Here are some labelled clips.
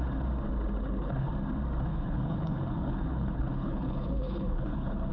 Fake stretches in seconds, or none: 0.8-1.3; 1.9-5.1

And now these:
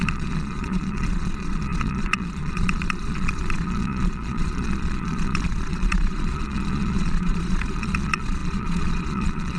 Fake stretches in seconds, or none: 0.0-9.6

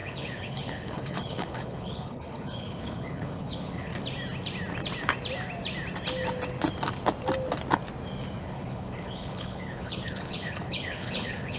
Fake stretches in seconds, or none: 0.0-3.9; 8.4-11.6